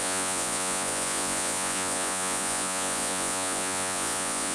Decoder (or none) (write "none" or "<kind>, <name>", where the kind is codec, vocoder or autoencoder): vocoder, Vocos